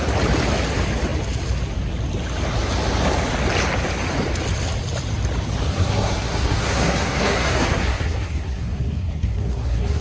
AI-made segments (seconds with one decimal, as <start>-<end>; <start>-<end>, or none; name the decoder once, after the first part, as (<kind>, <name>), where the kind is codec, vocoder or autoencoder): 5.7-10.0 (codec, SNAC)